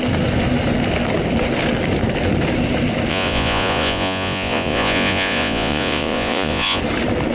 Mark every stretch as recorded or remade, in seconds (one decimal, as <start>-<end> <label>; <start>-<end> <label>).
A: 0.0-3.1 recorded; 3.1-6.8 remade; 6.8-7.3 recorded